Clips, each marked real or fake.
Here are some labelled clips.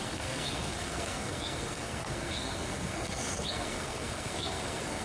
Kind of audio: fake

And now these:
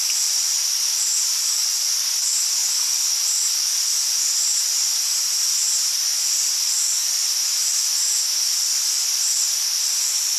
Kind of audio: real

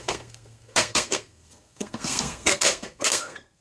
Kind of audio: fake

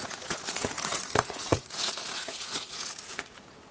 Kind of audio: fake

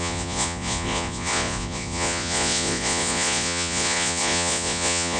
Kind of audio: fake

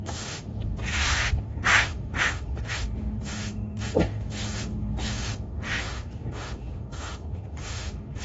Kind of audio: fake